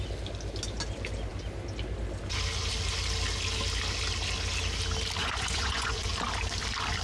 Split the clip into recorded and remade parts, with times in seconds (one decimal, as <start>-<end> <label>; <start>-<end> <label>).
0.0-5.2 recorded; 5.2-6.1 remade; 6.1-7.0 recorded